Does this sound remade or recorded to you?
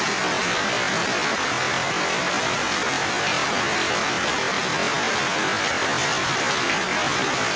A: recorded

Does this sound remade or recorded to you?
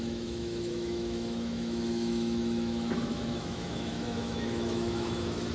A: remade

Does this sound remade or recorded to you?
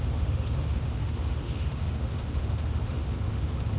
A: remade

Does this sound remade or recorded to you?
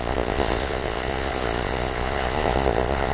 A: remade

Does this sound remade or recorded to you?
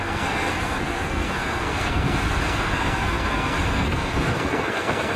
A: remade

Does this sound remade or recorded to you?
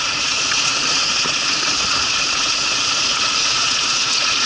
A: remade